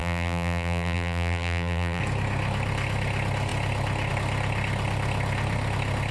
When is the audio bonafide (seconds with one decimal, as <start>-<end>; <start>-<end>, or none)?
2.0-6.1